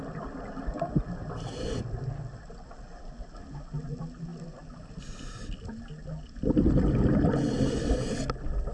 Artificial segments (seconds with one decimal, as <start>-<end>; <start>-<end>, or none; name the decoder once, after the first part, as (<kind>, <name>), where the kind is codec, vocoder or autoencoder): none

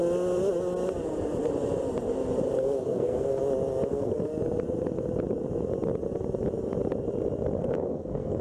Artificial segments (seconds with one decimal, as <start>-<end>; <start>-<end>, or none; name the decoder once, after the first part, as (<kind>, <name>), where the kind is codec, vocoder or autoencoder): 2.6-3.4 (codec, SNAC); 3.9-4.3; 7.6-8.4

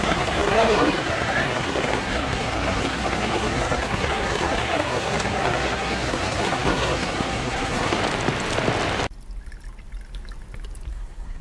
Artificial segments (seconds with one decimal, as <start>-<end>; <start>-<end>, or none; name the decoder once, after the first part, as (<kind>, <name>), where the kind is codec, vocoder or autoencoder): 0.0-8.0 (codec, SNAC); 10.9-11.4

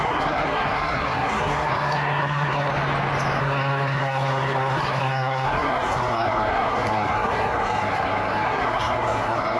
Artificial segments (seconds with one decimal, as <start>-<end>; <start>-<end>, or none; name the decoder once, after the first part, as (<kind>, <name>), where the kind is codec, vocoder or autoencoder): 0.0-2.7 (codec, SNAC); 3.4-9.6

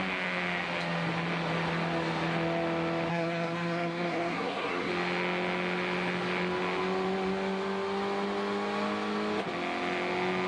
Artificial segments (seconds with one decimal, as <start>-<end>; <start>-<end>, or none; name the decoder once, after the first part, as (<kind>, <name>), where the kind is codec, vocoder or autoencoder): 3.1-4.9 (codec, SNAC)

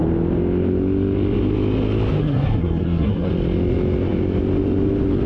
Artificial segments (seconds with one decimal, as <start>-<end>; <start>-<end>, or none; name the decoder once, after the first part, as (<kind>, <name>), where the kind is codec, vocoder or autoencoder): 2.2-3.3 (codec, SNAC)

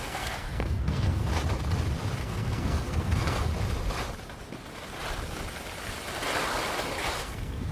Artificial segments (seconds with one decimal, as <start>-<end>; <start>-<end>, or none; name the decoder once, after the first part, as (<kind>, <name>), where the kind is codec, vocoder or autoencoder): 0.0-1.3 (codec, SNAC); 2.2-3.5; 7.2-7.7

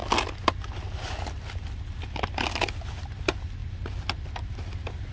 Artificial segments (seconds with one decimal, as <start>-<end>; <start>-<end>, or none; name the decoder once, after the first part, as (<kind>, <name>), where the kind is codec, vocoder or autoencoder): none